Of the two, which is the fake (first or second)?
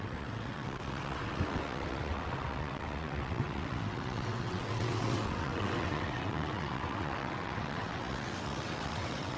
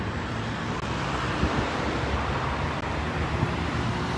first